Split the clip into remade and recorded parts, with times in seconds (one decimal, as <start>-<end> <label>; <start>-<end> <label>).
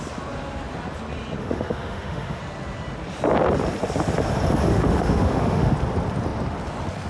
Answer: 0.0-1.4 recorded; 1.4-2.4 remade; 2.4-4.7 recorded; 4.7-5.7 remade; 5.7-7.1 recorded